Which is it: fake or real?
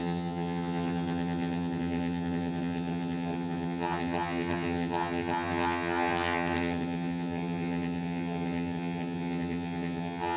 fake